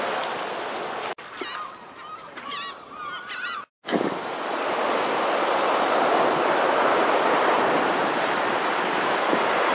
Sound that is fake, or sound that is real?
real